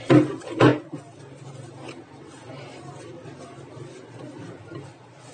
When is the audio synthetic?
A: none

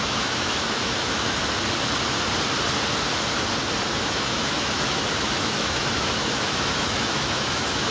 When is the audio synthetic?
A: 0.0-1.4 (autoencoder, DAC-VAE); 4.0-7.9

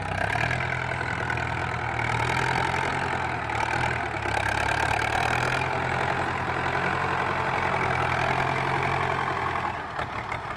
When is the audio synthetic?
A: none

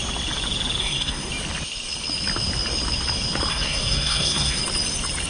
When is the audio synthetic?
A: 0.8-1.3 (codec, SNAC); 3.5-4.6

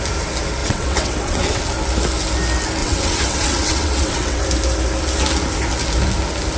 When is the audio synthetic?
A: 0.6-1.6 (vocoder, WaveNeXt); 2.8-4.4

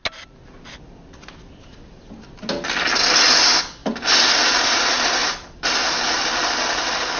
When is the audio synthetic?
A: 5.2-6.3 (vocoder, BigVGAN v2)